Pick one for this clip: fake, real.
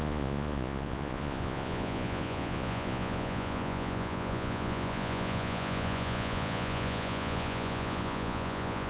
fake